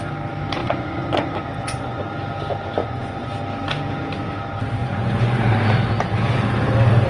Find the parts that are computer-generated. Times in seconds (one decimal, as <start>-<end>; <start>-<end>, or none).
0.6-2.0; 2.8-3.3; 4.8-5.5